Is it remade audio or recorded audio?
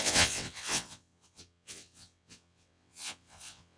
remade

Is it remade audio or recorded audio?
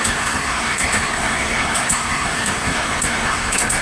remade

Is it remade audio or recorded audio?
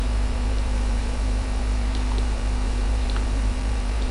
remade